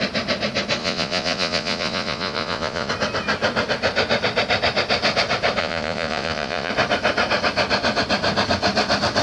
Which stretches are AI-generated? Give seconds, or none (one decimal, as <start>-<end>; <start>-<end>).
0.8-2.9; 5.6-6.7